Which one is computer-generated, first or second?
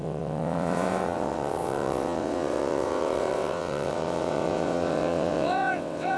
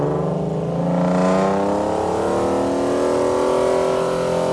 first